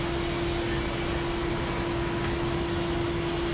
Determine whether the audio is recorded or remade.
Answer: recorded